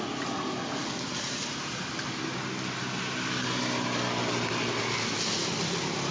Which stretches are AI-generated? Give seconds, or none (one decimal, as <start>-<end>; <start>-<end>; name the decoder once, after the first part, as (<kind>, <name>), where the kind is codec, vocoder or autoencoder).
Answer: none